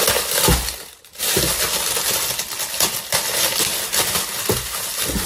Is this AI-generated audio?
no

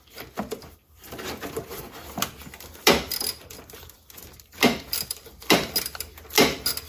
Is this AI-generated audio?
no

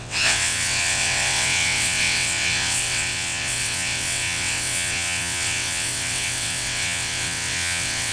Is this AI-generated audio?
yes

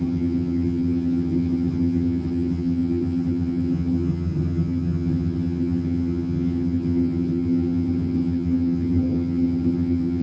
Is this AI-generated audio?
yes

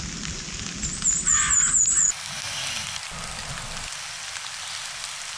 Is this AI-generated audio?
no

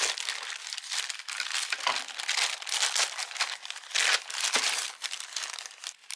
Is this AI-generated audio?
no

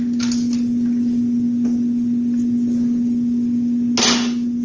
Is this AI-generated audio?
no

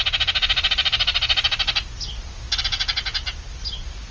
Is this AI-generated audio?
no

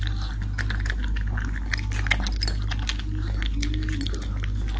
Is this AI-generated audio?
no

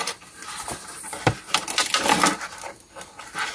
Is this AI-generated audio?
no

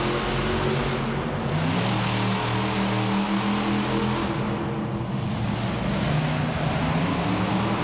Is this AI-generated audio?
no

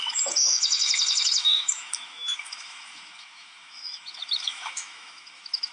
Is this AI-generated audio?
yes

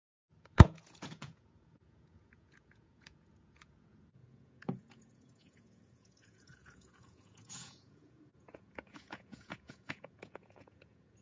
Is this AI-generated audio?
yes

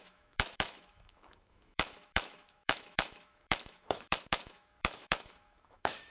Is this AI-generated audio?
yes